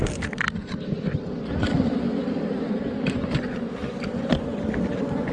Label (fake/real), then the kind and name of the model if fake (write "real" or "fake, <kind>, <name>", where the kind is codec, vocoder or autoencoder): real